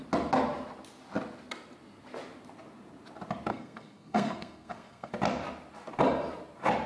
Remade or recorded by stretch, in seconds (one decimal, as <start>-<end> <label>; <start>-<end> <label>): 0.0-3.5 recorded; 3.5-5.1 remade; 5.1-6.9 recorded